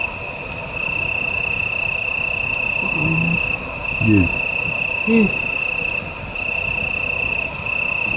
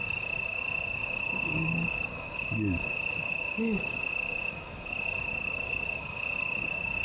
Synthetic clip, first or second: second